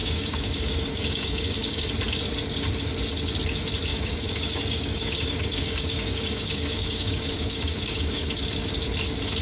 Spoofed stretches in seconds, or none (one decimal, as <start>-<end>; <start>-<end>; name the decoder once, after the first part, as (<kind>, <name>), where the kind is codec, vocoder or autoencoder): 0.0-1.9 (codec, DAC); 3.9-8.3